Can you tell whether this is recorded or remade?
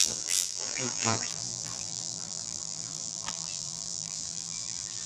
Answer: remade